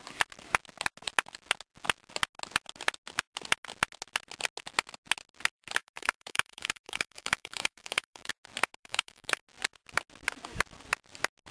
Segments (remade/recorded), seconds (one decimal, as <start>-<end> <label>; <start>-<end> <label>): 0.0-5.8 recorded; 5.8-8.3 remade; 8.3-8.8 recorded; 8.8-9.4 remade; 9.4-11.5 recorded